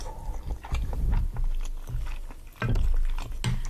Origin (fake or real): real